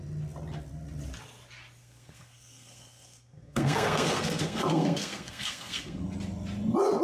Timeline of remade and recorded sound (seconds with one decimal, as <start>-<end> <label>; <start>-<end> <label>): 0.0-1.8 recorded; 1.8-6.0 remade; 6.0-7.0 recorded